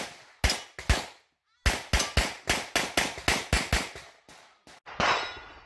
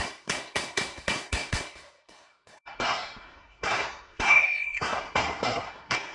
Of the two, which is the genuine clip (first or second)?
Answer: first